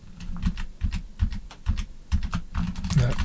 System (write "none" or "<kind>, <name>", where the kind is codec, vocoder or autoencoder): none